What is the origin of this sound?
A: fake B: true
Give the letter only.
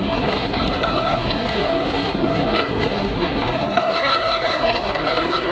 A